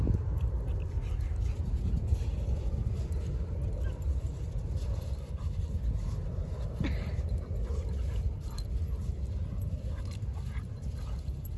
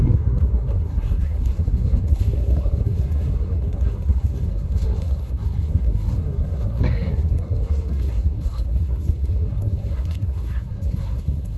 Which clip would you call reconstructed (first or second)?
second